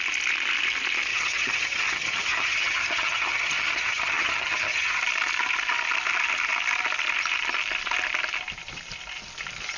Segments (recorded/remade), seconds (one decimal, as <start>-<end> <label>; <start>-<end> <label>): 0.0-1.1 recorded; 1.1-5.0 remade; 5.0-9.8 recorded